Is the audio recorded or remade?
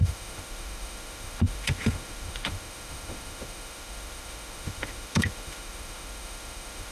remade